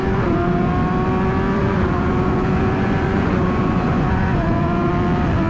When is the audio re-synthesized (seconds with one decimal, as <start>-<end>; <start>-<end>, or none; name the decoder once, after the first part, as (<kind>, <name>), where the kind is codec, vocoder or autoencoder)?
0.0-0.7 (vocoder, Vocos); 1.6-4.9